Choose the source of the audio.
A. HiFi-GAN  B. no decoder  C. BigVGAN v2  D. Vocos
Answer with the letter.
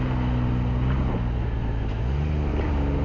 B